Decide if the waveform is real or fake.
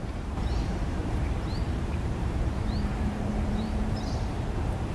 fake